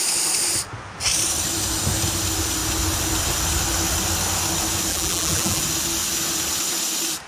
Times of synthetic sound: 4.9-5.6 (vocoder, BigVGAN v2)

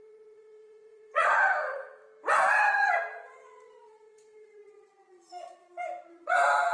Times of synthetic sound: 0.0-2.0 (vocoder, Vocos); 2.6-5.6; 6.1-6.7